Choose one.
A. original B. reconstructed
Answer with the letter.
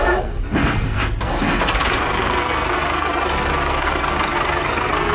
B